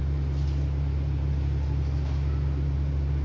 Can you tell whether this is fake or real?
real